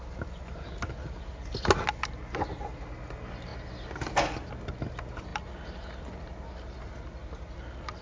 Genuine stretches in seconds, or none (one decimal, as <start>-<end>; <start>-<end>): 0.0-8.0